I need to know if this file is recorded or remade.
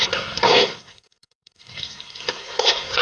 remade